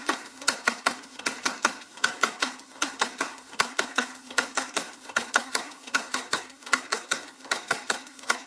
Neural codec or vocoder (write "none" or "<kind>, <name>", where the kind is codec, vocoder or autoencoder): codec, SNAC